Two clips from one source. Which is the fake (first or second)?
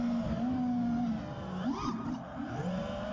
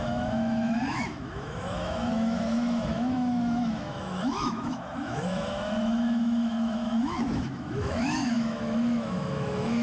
second